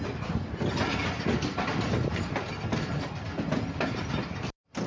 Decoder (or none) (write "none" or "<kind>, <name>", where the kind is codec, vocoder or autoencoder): none